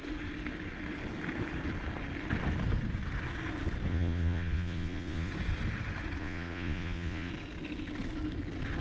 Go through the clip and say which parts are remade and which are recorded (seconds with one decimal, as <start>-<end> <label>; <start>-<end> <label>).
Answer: 0.0-3.9 recorded; 3.9-5.3 remade; 5.3-6.2 recorded; 6.2-7.3 remade; 7.3-8.8 recorded

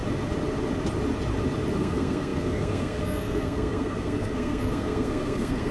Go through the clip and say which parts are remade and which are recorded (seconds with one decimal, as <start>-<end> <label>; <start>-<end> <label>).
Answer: 0.0-1.8 recorded; 1.8-5.7 remade

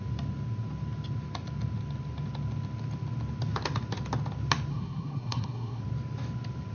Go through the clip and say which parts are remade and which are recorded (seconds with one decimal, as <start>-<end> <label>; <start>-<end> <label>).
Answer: 0.0-4.7 recorded; 4.7-5.8 remade; 5.8-6.7 recorded

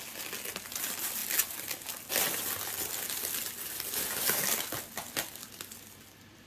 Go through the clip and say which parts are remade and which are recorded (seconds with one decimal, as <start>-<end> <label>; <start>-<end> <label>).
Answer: 0.0-6.5 recorded

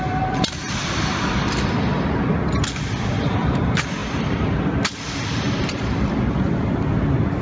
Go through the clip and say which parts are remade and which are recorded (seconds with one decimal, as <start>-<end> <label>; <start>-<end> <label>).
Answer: 0.0-1.9 remade; 1.9-2.8 recorded; 2.8-7.4 remade

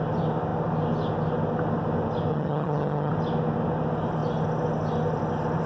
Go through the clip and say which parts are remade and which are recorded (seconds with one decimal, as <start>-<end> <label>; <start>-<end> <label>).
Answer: 0.0-2.3 recorded; 2.3-3.1 remade; 3.1-5.7 recorded

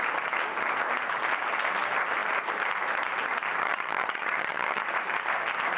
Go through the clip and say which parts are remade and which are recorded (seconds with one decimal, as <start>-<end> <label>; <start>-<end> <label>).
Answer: 0.0-3.6 recorded; 3.6-4.8 remade; 4.8-5.8 recorded